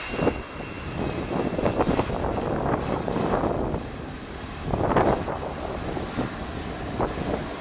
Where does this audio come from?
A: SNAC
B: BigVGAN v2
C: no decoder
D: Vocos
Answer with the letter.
C